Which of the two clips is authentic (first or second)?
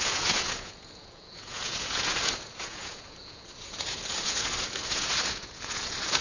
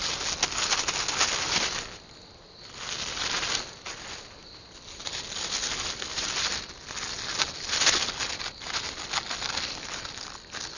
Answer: second